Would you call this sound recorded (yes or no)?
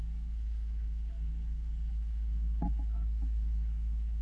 no